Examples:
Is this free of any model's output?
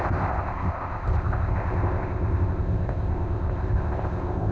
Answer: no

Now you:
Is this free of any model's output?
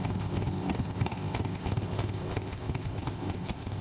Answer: no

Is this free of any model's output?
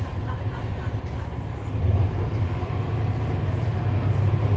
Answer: yes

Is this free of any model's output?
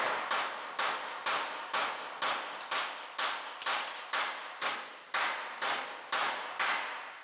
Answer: yes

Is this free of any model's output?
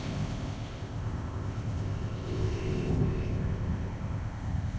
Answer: no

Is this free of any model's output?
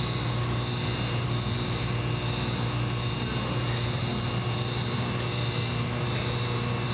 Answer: yes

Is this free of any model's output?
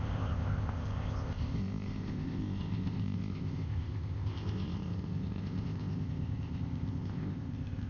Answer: no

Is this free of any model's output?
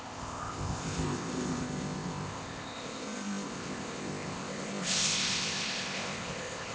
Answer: no